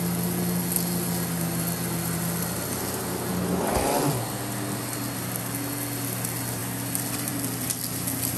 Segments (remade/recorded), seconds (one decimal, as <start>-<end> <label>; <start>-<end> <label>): 0.0-8.4 recorded

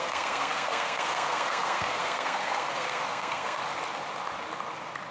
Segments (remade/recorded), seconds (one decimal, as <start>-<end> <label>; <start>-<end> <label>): 0.0-3.6 remade; 3.6-5.1 recorded

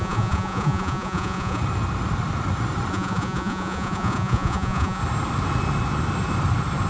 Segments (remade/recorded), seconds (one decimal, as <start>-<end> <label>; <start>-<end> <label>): 0.0-1.6 remade; 1.6-2.9 recorded; 2.9-5.0 remade; 5.0-6.9 recorded